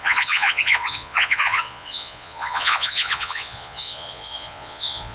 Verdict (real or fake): fake